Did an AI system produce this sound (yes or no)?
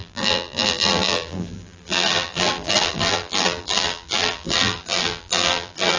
yes